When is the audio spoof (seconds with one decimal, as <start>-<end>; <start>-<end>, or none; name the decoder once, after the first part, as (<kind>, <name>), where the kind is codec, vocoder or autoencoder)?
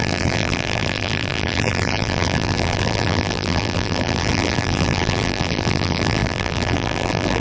0.0-7.4 (vocoder, BigVGAN v2)